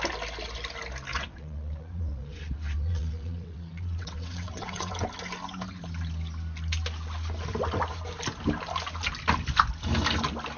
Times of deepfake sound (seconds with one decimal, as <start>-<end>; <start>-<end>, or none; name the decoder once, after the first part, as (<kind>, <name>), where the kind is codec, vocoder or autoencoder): 1.1-4.9 (vocoder, WaveNeXt)